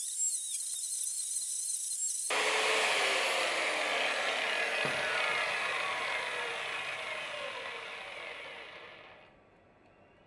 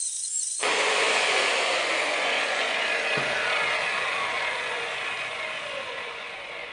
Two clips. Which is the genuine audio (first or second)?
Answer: first